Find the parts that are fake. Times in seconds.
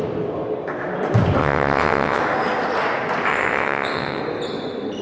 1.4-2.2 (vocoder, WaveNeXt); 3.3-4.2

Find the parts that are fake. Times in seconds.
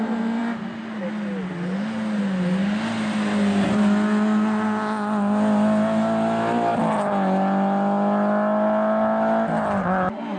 none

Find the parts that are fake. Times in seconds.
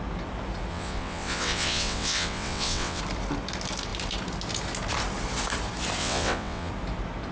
0.7-3.0 (vocoder, WaveNeXt); 6.0-6.7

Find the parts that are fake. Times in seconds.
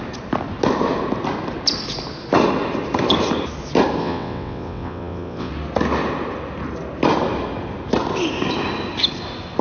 4.0-5.5 (vocoder, WaveNeXt)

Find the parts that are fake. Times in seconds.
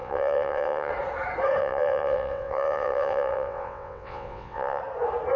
0.0-0.9 (vocoder, WaveNeXt); 1.6-4.8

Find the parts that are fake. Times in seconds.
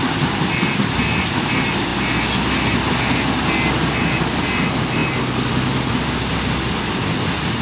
none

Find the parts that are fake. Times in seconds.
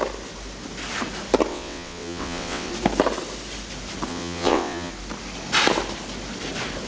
1.5-2.7 (vocoder, WaveNeXt); 4.1-4.9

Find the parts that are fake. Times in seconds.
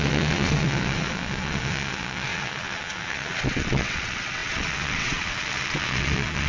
0.0-6.5 (vocoder, WaveNeXt)